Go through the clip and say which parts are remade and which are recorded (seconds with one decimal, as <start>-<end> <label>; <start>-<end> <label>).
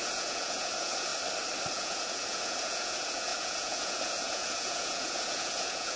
0.0-1.1 remade; 1.1-1.7 recorded; 1.7-6.0 remade